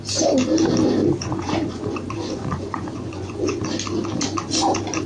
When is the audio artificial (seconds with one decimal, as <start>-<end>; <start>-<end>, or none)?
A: 1.0-3.6